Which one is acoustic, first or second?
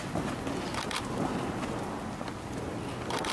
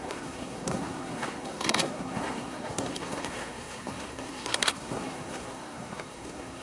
first